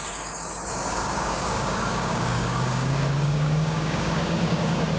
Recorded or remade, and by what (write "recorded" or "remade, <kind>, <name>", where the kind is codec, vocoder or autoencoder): remade, codec, DAC